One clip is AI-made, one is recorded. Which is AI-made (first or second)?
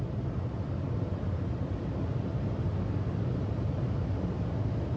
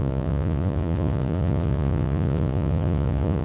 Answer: second